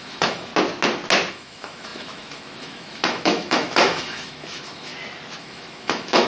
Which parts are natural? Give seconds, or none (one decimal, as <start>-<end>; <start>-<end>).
0.5-1.3; 4.9-5.4